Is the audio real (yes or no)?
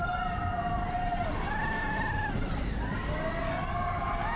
yes